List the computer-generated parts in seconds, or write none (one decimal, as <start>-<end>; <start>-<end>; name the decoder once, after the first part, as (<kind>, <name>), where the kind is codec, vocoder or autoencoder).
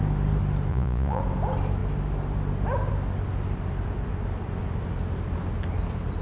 0.7-1.2 (vocoder, Vocos)